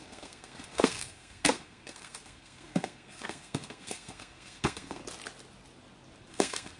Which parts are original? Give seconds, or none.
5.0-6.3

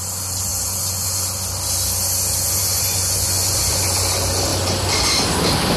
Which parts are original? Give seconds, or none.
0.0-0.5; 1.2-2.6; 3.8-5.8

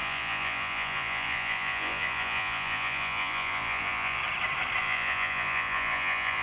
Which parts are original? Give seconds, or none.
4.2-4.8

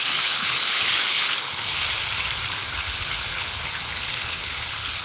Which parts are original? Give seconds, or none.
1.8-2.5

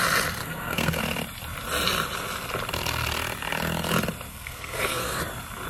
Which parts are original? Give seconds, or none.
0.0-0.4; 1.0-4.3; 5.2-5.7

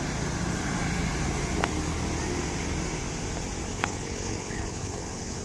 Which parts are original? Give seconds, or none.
0.0-3.7